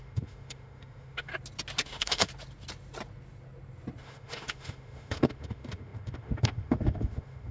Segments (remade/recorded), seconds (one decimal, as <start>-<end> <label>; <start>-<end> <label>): 0.0-1.3 remade; 1.3-1.8 recorded; 1.8-2.3 remade; 2.3-4.0 recorded; 4.0-7.5 remade